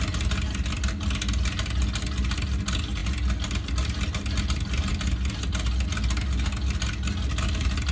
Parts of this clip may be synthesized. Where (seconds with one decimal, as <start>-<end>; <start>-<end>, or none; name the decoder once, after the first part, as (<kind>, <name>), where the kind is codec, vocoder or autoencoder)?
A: none